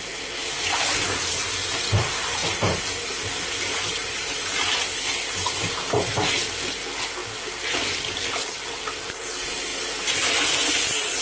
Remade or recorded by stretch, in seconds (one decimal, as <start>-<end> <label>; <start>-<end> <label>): 0.0-7.2 recorded; 7.2-9.0 remade; 9.0-9.7 recorded; 9.7-10.5 remade; 10.5-11.2 recorded